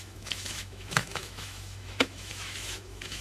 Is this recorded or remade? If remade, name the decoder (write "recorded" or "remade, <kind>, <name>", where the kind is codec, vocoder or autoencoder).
remade, autoencoder, DAC-VAE